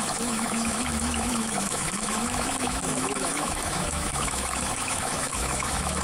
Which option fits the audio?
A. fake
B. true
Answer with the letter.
A